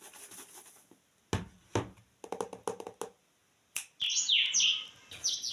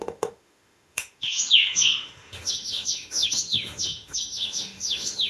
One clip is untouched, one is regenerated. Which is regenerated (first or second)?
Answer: second